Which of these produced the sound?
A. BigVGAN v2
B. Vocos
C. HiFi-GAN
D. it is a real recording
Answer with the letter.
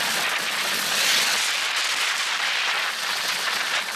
D